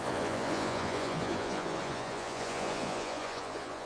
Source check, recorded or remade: remade